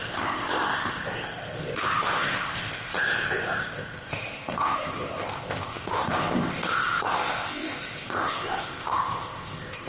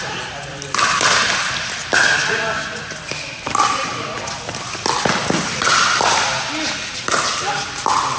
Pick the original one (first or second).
second